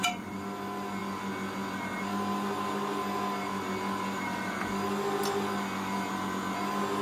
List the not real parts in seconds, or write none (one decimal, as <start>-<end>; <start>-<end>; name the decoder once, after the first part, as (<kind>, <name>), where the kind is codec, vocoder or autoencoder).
none

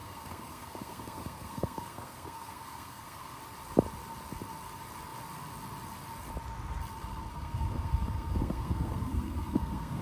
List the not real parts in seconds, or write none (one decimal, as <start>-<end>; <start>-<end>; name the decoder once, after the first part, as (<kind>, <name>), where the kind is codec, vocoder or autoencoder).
0.0-3.4 (codec, SNAC); 7.3-10.0

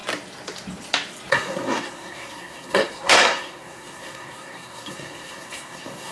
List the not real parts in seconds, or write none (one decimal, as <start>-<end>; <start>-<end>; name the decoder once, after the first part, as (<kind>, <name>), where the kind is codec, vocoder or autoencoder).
1.3-6.1 (codec, SNAC)

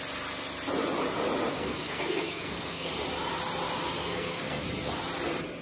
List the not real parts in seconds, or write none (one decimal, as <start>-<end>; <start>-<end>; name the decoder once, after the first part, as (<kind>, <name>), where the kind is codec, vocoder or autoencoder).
1.5-2.9 (codec, SNAC); 4.0-4.6